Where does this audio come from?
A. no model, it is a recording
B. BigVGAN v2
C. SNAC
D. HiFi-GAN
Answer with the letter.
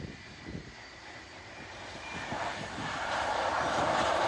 B